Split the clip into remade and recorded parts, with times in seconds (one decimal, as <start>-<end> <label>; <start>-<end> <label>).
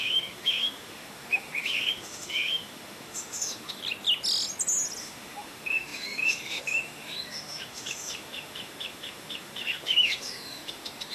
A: 0.0-3.8 remade; 3.8-5.0 recorded; 5.0-11.1 remade